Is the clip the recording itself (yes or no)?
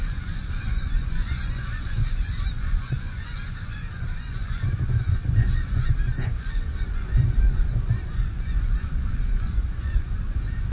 no